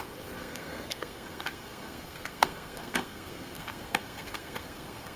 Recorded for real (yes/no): no